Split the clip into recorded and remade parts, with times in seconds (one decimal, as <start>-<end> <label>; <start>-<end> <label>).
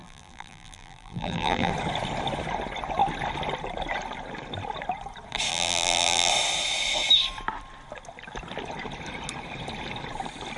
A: 0.0-1.7 remade; 1.7-5.5 recorded; 5.5-6.3 remade; 6.3-10.6 recorded